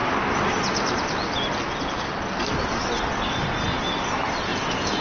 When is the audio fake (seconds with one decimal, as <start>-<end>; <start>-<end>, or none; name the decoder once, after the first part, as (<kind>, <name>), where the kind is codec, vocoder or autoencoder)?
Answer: 4.5-5.0 (vocoder, Vocos)